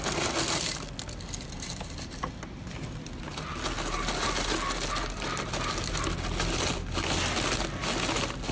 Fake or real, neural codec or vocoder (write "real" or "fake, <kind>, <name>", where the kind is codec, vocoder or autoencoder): real